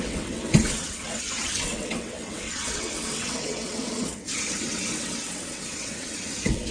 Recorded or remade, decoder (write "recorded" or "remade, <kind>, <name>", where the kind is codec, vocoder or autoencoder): remade, vocoder, WaveNeXt